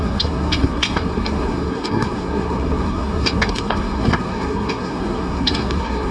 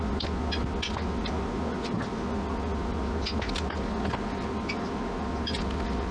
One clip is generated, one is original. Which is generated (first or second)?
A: first